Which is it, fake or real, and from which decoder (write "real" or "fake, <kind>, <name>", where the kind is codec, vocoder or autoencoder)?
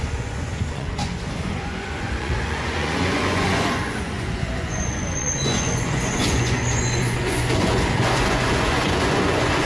fake, vocoder, Vocos